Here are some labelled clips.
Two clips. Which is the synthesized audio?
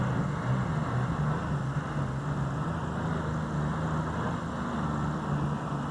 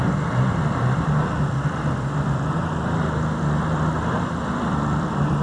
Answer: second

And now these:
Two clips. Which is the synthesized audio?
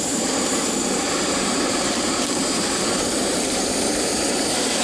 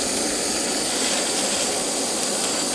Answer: first